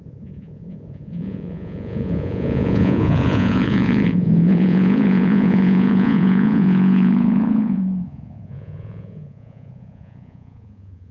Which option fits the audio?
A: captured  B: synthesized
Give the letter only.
B